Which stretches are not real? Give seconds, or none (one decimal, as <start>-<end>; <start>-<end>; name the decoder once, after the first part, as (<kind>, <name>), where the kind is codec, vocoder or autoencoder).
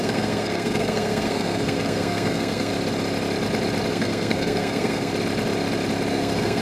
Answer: 0.0-2.7 (codec, SNAC); 3.9-5.1; 6.1-6.6